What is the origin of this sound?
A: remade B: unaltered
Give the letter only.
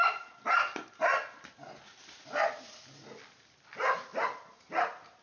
B